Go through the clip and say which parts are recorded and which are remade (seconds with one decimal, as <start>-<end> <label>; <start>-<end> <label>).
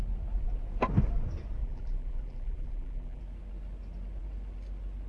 0.0-1.6 recorded; 1.6-3.2 remade; 3.2-5.1 recorded